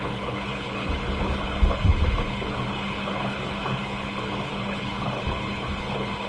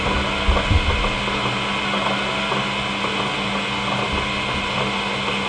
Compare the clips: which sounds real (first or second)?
second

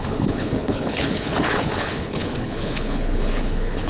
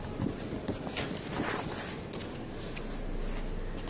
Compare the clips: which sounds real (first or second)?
second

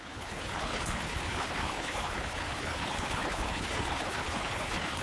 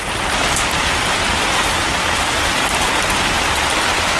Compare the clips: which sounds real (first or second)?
second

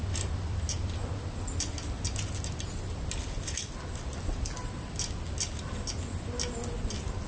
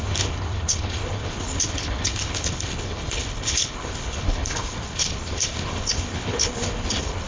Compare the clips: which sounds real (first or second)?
first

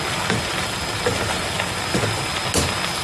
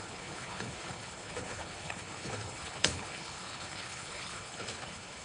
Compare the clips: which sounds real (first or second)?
first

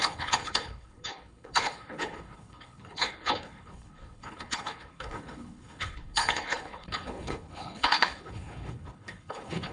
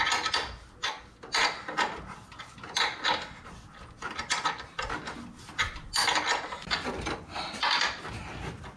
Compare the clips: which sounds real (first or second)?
second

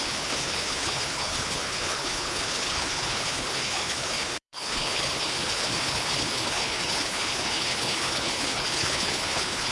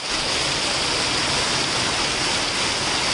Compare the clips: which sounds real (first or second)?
second